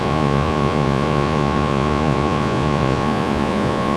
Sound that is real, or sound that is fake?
fake